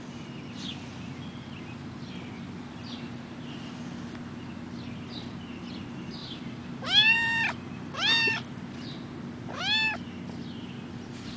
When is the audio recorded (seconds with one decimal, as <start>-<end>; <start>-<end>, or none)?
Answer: 0.0-6.2; 8.4-11.4